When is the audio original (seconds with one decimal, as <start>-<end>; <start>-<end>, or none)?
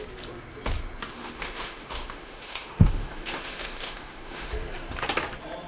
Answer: 0.0-1.1; 4.5-5.7